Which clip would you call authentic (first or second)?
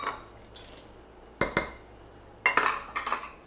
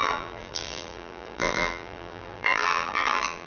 first